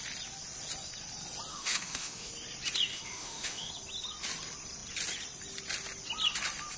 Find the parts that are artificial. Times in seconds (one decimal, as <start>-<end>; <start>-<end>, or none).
1.5-2.3; 2.9-3.7